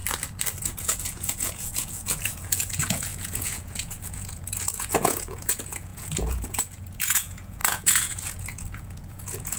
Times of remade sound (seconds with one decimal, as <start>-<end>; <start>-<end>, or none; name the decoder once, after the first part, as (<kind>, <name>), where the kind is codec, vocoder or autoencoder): 0.6-9.6 (vocoder, Vocos)